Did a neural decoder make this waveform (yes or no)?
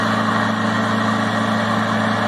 no